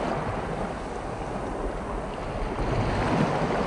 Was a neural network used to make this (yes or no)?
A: no